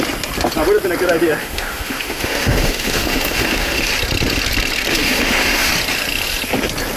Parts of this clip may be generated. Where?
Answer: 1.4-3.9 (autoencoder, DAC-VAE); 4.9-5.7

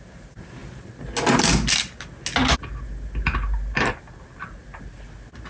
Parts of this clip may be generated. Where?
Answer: none

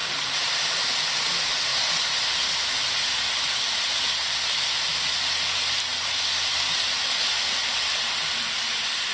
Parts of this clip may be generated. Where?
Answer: 0.0-1.2 (vocoder, BigVGAN v2)

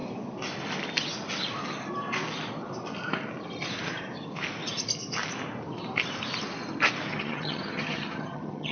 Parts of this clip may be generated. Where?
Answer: 7.1-8.7 (vocoder, HiFi-GAN)

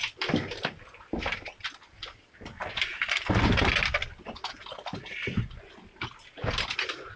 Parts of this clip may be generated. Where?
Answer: none

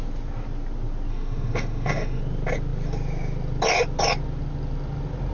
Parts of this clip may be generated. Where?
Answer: 1.1-2.2 (autoencoder, DAC-VAE)

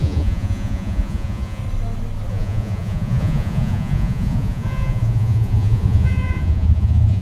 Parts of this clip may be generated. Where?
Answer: 0.0-1.6 (vocoder, Vocos); 2.3-7.2